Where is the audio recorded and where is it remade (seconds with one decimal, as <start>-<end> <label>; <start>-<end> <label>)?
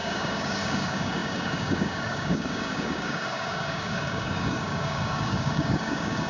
0.0-6.3 remade